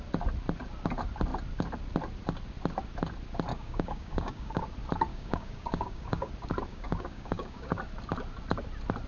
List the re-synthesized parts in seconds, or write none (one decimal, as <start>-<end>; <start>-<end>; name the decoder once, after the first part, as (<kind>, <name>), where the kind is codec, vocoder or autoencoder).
3.5-4.6 (codec, DAC); 5.1-6.3; 6.7-7.8